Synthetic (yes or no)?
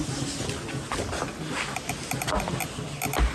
no